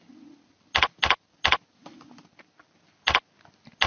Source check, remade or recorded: recorded